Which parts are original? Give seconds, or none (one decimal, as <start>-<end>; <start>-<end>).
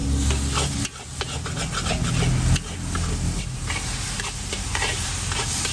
0.0-3.4